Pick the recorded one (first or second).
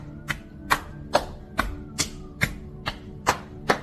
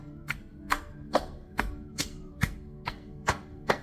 first